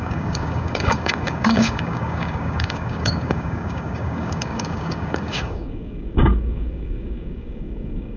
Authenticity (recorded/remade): remade